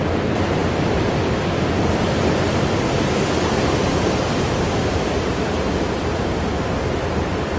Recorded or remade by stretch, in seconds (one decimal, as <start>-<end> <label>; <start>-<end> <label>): 0.0-7.6 remade